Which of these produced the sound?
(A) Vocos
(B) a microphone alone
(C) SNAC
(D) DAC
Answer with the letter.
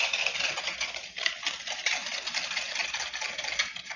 B